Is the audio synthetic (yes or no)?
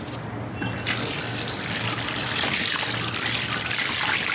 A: no